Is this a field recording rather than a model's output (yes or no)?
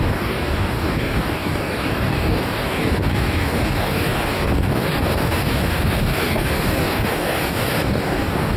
no